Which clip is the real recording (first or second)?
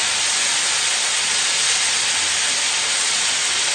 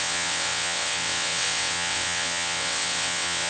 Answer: first